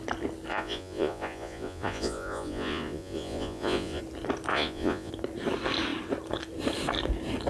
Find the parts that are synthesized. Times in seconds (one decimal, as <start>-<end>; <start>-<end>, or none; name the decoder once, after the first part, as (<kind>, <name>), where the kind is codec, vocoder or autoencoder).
0.5-4.0 (vocoder, Vocos); 4.5-5.1